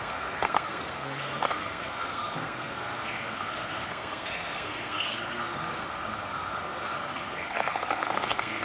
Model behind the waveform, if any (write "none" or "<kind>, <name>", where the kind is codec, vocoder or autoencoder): codec, SNAC